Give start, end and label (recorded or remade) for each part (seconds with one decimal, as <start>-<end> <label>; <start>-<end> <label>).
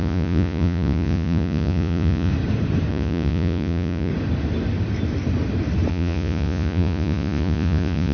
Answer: 0.0-2.3 remade; 2.3-2.9 recorded; 2.9-4.1 remade; 4.1-5.9 recorded; 5.9-8.1 remade